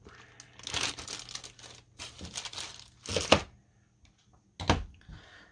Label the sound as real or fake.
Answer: real